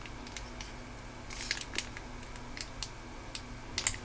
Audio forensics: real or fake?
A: real